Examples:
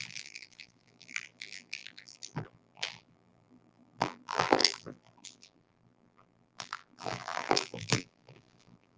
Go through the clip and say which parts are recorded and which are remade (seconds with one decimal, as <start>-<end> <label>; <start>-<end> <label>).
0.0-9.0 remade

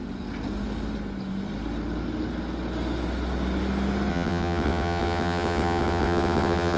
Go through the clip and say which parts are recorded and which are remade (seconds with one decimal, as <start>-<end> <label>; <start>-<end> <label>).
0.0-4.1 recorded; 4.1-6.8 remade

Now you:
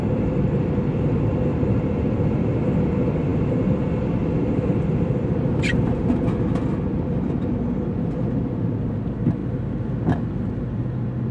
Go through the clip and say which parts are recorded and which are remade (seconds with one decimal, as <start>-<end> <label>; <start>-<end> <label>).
0.0-11.3 recorded